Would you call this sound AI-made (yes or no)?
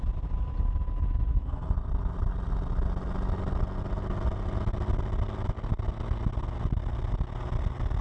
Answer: no